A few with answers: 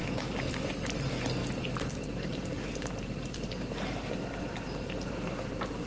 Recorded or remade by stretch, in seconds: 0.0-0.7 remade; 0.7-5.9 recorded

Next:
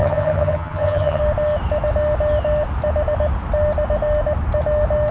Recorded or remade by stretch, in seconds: 0.0-1.2 remade; 1.2-5.1 recorded

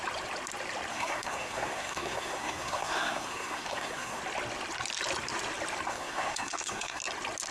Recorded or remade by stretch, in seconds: 0.0-0.9 recorded; 0.9-4.2 remade; 4.2-5.9 recorded; 5.9-7.0 remade; 7.0-7.5 recorded

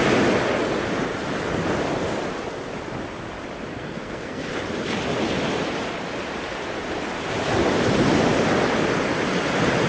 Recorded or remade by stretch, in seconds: 0.0-3.7 recorded; 3.7-4.5 remade; 4.5-9.9 recorded